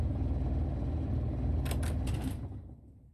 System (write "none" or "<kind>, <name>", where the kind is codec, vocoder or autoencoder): none